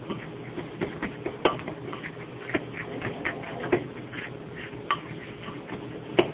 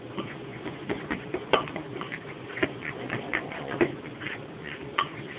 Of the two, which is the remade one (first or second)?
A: second